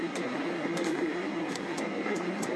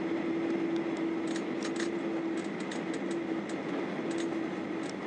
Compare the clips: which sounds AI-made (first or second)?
first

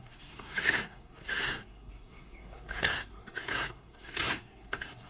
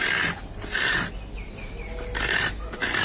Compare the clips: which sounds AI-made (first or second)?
first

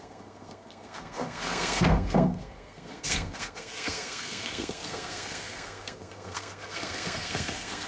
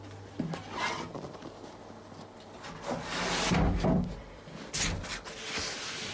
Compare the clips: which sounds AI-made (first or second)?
first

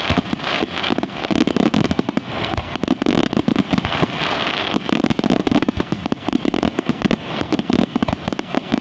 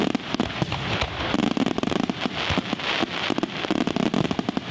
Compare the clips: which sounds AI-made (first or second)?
first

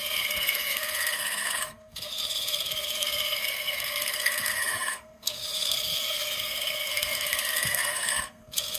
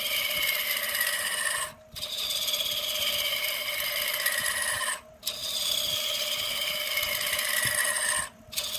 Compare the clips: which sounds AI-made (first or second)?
first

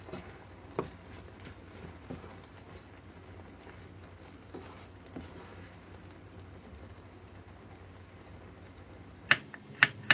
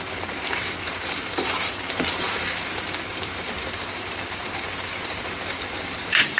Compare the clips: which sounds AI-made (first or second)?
second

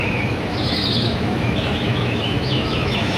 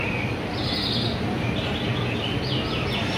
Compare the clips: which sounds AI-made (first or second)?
first